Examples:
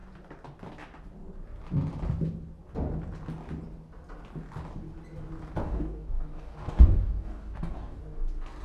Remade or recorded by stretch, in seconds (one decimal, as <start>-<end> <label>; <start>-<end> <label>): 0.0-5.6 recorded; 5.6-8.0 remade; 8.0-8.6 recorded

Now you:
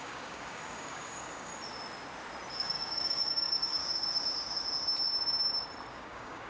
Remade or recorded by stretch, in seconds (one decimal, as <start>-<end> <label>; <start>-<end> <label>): 0.0-1.5 remade; 1.5-2.5 recorded; 2.5-3.8 remade; 3.8-5.9 recorded; 5.9-6.5 remade

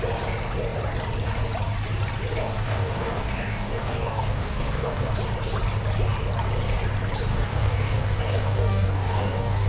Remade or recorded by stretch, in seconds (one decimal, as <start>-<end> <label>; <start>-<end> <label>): 0.0-2.4 recorded; 2.4-5.1 remade; 5.1-7.3 recorded; 7.3-9.7 remade

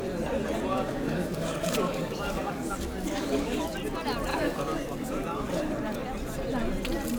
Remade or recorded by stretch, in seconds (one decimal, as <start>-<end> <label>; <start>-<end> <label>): 0.0-0.7 recorded; 0.7-3.6 remade; 3.6-4.3 recorded; 4.3-5.5 remade; 5.5-7.2 recorded

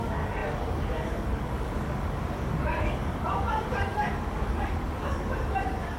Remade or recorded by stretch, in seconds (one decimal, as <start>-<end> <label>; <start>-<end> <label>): 0.0-6.0 remade